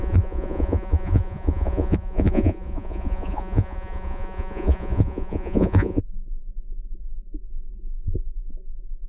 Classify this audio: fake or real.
fake